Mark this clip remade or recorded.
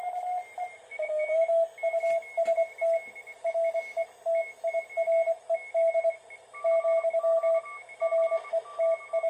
recorded